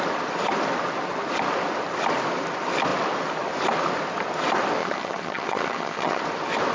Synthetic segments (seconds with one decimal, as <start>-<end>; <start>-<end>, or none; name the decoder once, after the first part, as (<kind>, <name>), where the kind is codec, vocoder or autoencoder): 4.8-6.2 (vocoder, HiFi-GAN)

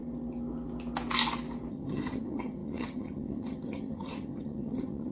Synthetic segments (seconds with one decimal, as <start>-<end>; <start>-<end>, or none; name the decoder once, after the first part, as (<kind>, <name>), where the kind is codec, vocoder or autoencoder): 1.7-5.1 (vocoder, HiFi-GAN)

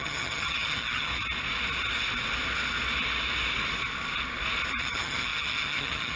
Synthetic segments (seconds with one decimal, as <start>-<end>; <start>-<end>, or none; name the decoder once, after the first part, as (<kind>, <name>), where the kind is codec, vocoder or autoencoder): 0.0-1.1 (vocoder, HiFi-GAN); 4.8-6.2

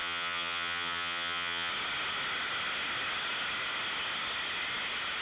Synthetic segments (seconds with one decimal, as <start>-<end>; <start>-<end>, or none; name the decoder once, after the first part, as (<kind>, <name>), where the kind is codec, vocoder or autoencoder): 0.0-1.7 (vocoder, HiFi-GAN)

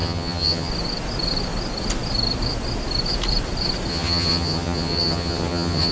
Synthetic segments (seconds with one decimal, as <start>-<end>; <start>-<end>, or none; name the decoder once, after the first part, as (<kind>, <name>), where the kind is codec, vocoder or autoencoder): 0.0-0.7 (vocoder, HiFi-GAN); 3.9-5.9

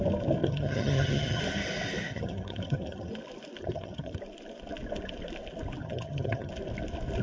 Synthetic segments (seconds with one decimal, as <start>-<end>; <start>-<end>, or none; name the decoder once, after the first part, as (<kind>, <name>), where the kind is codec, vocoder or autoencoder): 0.4-1.4 (vocoder, HiFi-GAN); 2.1-3.1; 3.6-4.2; 5.8-6.5

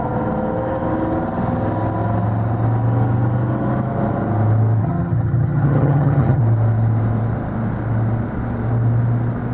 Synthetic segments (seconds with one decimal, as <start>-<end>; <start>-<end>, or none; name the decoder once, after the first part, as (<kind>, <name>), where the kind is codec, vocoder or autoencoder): 4.8-6.4 (vocoder, HiFi-GAN)